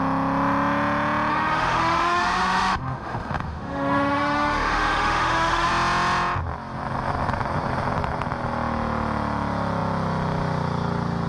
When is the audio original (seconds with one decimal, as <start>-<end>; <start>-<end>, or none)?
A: 0.0-1.3; 5.7-11.3